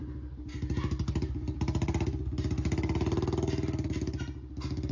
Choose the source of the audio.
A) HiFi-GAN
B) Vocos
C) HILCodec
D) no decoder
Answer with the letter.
D